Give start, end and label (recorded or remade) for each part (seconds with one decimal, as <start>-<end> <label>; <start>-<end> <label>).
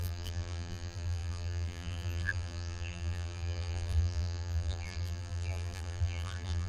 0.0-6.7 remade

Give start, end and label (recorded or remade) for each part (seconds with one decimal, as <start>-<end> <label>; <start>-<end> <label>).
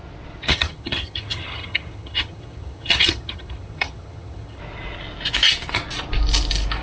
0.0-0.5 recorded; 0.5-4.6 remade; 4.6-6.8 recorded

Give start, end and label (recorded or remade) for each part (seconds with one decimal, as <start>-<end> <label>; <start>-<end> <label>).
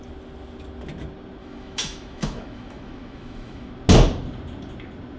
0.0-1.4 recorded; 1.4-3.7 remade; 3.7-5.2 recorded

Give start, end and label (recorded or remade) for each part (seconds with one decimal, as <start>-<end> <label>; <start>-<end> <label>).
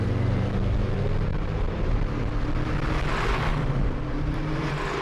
0.0-1.3 recorded; 1.3-2.3 remade; 2.3-3.5 recorded; 3.5-4.6 remade; 4.6-5.0 recorded